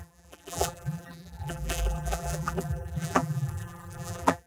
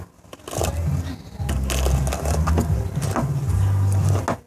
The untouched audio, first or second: second